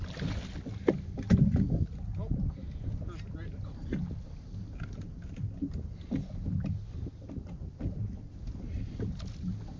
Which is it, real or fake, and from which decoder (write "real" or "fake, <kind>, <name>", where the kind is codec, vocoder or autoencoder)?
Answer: real